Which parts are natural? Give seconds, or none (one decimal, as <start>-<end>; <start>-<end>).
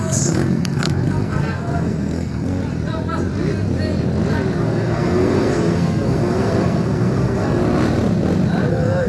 2.6-4.6; 7.6-8.7